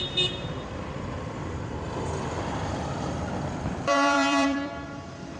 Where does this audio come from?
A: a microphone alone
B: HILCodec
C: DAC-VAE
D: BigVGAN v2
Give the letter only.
D